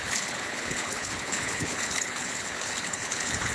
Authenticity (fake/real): fake